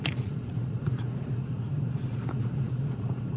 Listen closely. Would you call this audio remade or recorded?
remade